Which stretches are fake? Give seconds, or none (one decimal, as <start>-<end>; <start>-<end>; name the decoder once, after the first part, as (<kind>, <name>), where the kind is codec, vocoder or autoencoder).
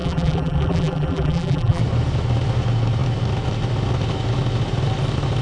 0.0-1.8 (vocoder, BigVGAN v2)